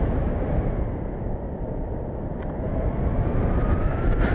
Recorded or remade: recorded